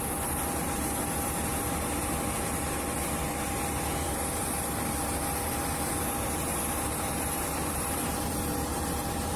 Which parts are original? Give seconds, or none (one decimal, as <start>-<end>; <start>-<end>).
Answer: 0.0-9.4